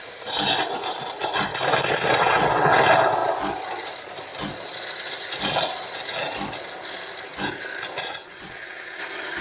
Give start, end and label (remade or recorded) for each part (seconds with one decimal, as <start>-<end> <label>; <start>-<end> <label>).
0.0-2.1 recorded; 2.1-2.8 remade; 2.8-8.0 recorded; 8.0-9.0 remade; 9.0-9.4 recorded